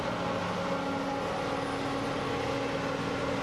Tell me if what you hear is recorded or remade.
recorded